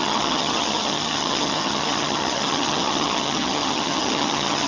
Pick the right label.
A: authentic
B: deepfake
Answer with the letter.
B